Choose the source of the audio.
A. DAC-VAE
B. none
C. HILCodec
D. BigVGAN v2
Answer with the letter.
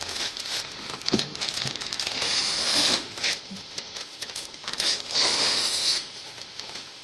A